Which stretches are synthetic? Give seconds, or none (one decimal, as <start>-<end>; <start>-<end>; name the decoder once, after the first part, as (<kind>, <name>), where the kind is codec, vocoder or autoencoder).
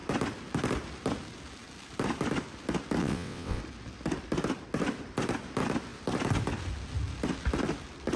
3.0-3.6 (vocoder, WaveNeXt)